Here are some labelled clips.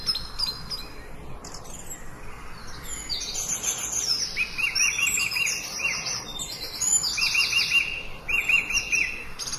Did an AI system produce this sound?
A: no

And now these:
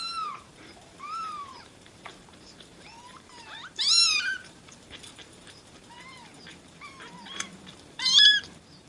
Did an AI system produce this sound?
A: yes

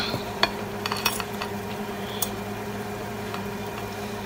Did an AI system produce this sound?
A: yes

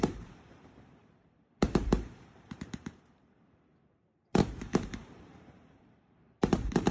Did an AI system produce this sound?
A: yes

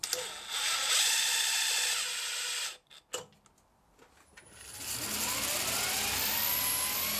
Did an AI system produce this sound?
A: no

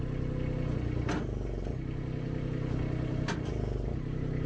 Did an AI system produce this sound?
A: no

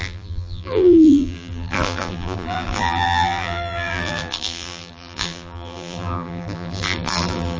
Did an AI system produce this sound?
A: yes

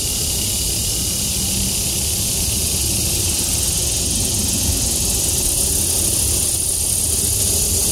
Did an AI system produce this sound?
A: no